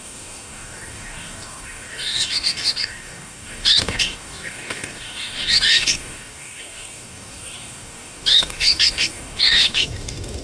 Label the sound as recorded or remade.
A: remade